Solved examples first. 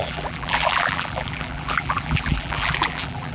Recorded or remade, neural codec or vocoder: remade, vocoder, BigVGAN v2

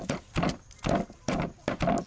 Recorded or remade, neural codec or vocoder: recorded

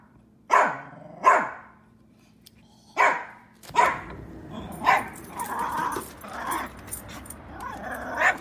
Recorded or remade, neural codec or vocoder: remade, vocoder, BigVGAN v2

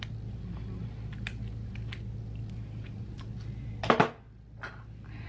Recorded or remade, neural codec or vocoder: recorded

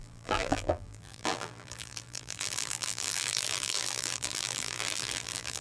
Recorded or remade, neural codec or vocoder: remade, vocoder, BigVGAN v2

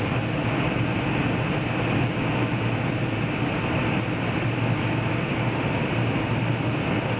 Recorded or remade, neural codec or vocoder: recorded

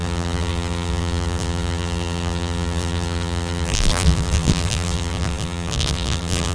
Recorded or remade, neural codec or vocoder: remade, vocoder, BigVGAN v2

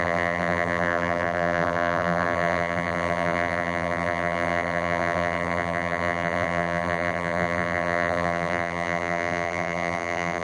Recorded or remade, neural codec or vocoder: remade, vocoder, BigVGAN v2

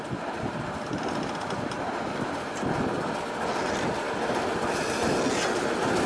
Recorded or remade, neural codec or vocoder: recorded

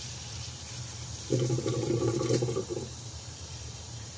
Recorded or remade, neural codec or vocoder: remade, vocoder, BigVGAN v2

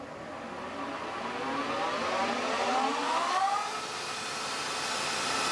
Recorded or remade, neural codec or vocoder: recorded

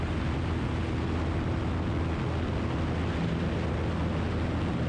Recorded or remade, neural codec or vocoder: recorded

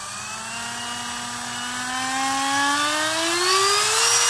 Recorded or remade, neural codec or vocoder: recorded